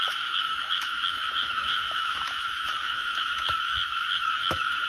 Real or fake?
fake